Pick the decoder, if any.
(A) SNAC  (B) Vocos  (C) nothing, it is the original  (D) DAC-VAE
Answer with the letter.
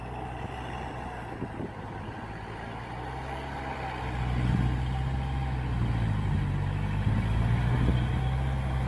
C